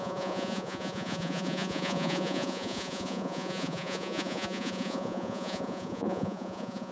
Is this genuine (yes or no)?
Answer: no